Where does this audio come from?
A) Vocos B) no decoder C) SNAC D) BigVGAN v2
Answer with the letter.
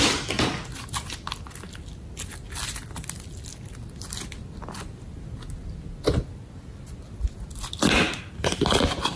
B